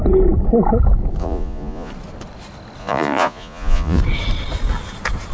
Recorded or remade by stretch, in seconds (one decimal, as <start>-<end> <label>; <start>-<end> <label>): 0.0-1.2 recorded; 1.2-1.9 remade; 1.9-2.8 recorded; 2.8-4.0 remade; 4.0-5.3 recorded